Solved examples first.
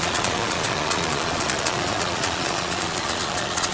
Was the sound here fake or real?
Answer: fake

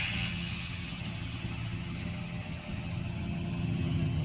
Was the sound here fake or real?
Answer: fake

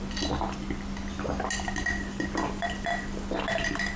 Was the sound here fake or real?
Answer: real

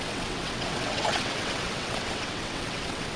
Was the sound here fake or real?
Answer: fake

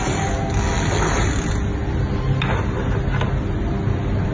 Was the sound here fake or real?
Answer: real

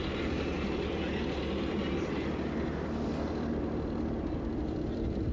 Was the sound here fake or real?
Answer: fake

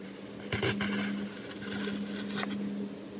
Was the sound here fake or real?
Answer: real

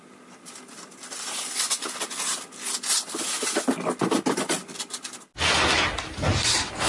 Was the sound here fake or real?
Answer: real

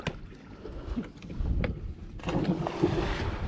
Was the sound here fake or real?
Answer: real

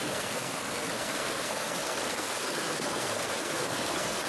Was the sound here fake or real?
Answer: fake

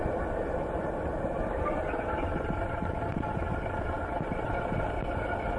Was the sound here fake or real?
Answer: real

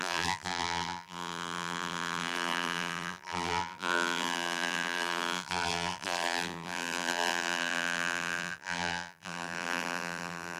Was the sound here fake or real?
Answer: fake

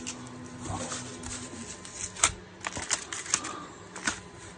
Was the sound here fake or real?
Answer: real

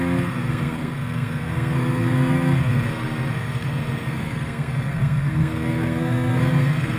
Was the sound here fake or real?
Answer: fake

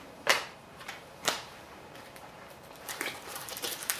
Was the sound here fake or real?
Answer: fake